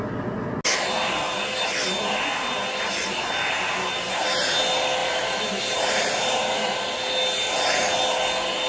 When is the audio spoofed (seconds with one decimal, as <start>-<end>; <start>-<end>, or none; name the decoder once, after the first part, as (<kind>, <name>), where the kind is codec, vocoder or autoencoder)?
5.0-6.7 (vocoder, BigVGAN v2)